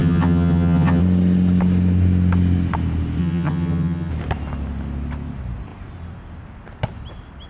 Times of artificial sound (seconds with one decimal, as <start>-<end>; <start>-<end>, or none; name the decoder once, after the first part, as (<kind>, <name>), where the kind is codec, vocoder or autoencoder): 0.0-1.0 (vocoder, HiFi-GAN); 3.2-4.1